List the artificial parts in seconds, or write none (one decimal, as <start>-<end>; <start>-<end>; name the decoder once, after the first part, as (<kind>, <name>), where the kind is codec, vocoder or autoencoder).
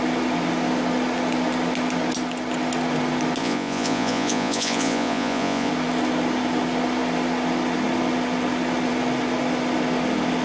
3.4-5.7 (vocoder, Vocos)